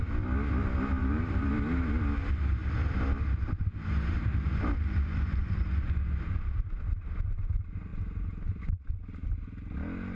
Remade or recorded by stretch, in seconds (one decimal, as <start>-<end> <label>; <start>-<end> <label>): 0.0-1.0 recorded; 1.0-1.5 remade; 1.5-10.1 recorded